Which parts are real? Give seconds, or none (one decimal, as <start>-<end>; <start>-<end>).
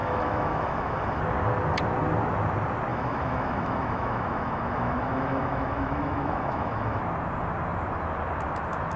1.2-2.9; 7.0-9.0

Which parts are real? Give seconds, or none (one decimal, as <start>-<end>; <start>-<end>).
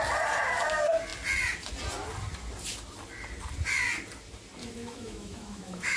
0.0-4.6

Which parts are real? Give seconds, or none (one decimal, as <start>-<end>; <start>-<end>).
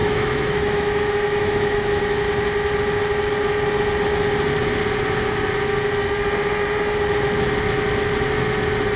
2.0-9.0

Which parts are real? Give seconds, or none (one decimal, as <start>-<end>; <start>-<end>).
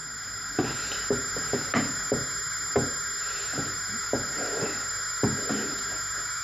0.0-6.4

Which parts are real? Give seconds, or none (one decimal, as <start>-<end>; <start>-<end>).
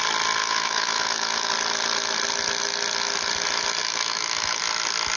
0.0-0.4; 1.5-3.8; 4.6-5.2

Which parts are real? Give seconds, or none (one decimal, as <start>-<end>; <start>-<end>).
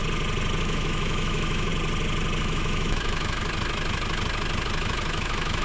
0.0-0.6; 1.7-2.4; 3.4-4.8